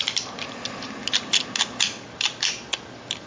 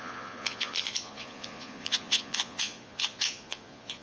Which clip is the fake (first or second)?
second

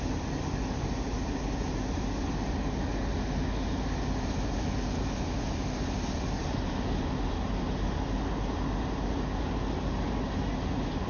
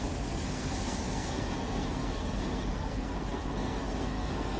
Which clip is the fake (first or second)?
second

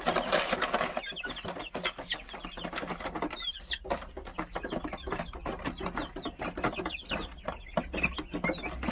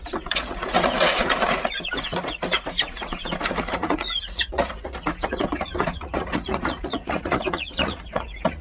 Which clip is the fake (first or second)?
second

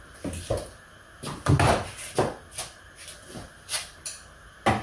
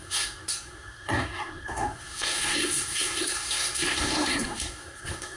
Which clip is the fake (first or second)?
second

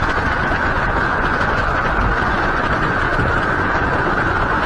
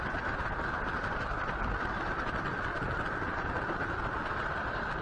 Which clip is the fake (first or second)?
first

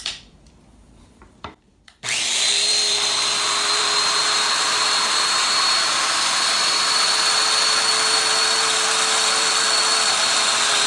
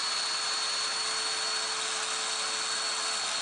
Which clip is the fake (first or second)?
first